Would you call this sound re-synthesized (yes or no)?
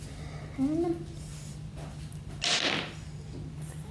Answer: no